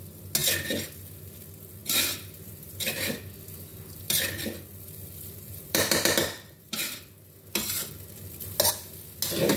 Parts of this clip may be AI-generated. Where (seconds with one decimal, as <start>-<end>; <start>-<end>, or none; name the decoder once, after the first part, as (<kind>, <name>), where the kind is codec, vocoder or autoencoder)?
1.8-3.2 (vocoder, BigVGAN v2); 3.7-7.1